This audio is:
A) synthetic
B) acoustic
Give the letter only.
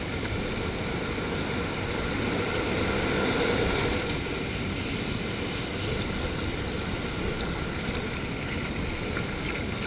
B